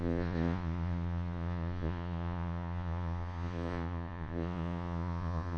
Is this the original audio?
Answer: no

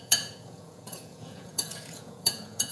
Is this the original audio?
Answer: no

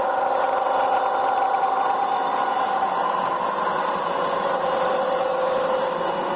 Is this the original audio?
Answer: yes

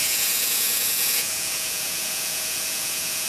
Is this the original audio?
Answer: no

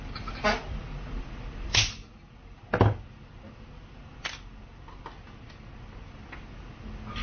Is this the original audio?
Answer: yes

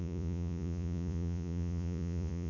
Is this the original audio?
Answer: no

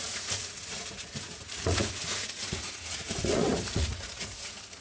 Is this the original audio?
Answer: no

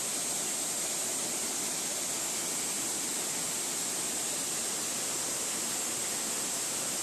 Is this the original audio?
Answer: yes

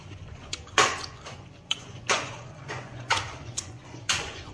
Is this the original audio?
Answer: no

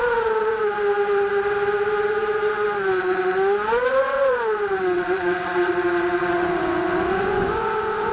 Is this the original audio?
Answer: no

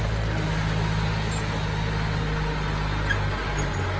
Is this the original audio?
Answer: yes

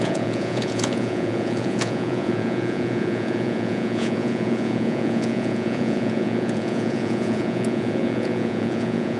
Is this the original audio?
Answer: no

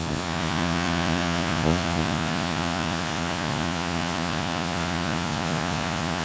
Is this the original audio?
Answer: no